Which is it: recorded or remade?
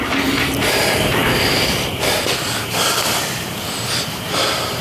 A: recorded